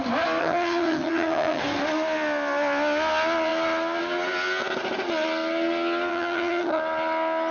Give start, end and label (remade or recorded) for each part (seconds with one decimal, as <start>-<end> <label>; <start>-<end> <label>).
0.0-0.4 recorded; 0.4-1.6 remade; 1.6-6.1 recorded; 6.1-6.8 remade; 6.8-7.5 recorded